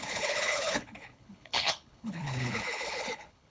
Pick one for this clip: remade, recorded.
remade